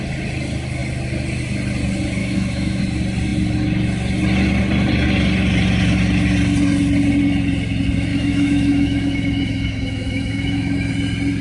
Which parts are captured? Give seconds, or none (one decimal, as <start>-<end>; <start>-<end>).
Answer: 0.0-2.2; 2.8-8.1; 10.9-11.4